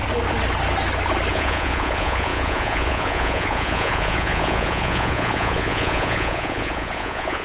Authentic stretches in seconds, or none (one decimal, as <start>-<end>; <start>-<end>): 0.0-1.3